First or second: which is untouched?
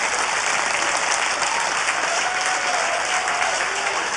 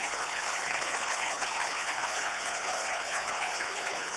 first